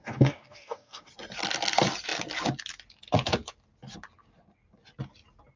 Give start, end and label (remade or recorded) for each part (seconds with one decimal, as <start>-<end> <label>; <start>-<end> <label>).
0.0-1.1 remade; 1.1-5.6 recorded